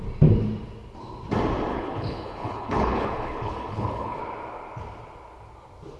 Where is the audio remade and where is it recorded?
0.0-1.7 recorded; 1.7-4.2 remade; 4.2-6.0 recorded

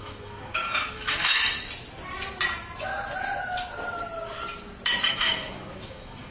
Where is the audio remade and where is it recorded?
0.0-1.4 remade; 1.4-5.1 recorded; 5.1-6.3 remade